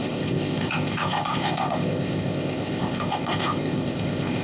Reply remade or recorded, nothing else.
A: remade